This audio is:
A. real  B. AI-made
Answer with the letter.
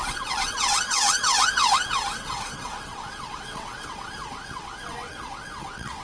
B